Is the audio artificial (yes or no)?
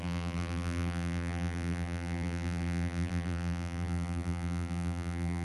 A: yes